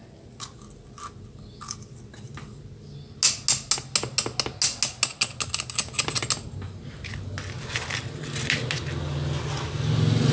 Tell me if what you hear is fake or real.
real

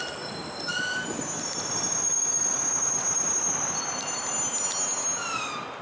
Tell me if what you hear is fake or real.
real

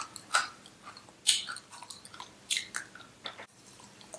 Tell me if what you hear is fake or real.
real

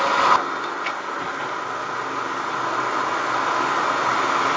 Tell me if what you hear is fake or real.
real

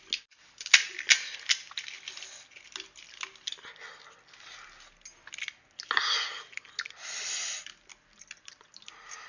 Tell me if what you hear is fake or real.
real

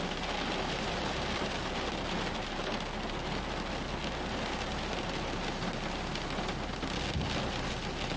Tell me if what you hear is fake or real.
real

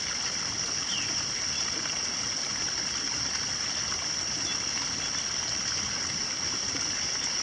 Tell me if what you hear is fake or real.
real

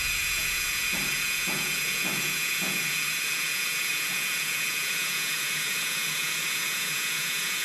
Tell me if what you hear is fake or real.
fake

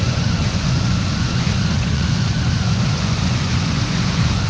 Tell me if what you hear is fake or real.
fake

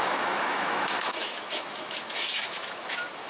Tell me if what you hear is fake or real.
fake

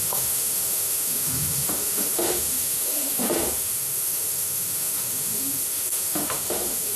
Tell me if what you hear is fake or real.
fake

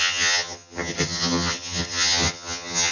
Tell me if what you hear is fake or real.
fake